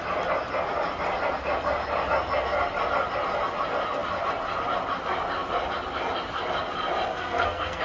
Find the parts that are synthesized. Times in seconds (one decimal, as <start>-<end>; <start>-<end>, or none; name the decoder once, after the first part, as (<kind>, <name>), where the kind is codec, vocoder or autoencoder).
7.1-7.8 (codec, SNAC)